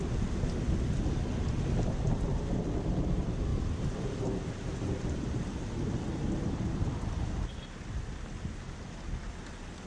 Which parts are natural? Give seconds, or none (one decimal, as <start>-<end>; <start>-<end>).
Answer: 0.0-3.5; 5.4-9.9